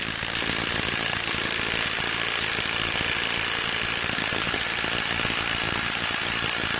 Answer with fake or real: real